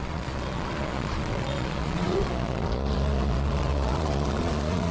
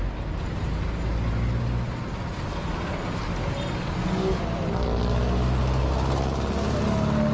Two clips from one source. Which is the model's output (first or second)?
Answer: first